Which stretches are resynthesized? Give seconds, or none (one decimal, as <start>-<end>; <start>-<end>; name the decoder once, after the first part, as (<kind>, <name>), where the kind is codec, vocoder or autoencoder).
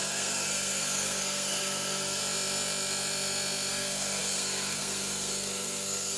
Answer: 0.0-2.2 (codec, SNAC); 3.7-6.2